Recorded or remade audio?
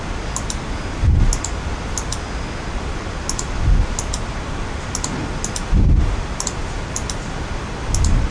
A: recorded